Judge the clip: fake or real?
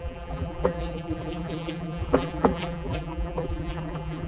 fake